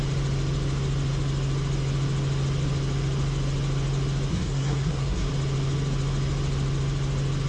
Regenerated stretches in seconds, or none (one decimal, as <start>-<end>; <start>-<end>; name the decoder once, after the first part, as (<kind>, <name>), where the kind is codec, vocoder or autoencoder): 4.3-5.3 (codec, SNAC)